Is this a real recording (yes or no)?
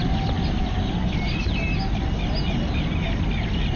yes